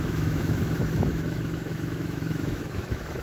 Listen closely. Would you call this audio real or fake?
fake